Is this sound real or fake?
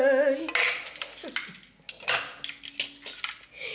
real